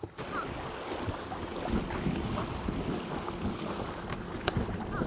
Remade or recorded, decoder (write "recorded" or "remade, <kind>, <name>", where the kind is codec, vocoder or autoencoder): recorded